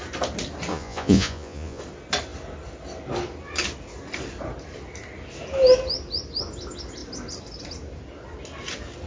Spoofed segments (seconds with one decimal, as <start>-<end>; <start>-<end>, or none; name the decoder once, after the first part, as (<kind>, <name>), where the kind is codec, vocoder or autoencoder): 0.7-1.8 (vocoder, Vocos)